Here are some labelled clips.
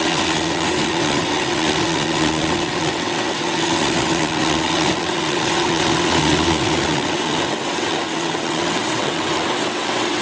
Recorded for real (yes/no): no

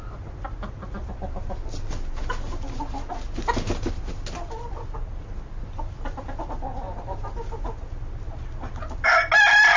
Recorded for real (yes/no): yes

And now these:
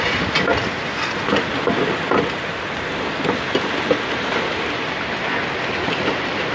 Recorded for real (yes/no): yes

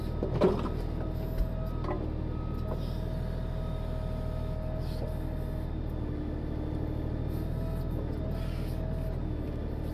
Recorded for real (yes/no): yes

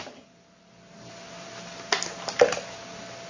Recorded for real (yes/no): yes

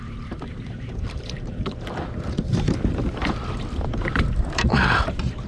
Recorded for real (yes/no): no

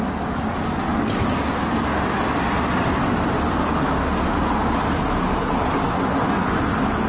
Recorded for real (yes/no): yes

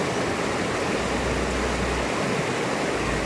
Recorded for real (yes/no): yes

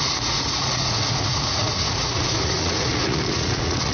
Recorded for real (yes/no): no